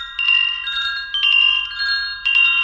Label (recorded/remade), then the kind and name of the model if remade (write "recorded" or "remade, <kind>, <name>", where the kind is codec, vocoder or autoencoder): recorded